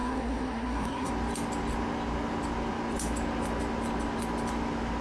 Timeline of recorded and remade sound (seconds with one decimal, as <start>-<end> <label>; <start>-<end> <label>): 0.0-1.1 remade; 1.1-5.0 recorded